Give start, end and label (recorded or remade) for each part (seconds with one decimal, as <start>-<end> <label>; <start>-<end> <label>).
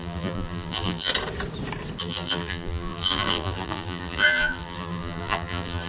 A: 0.0-1.1 remade; 1.1-2.0 recorded; 2.0-5.9 remade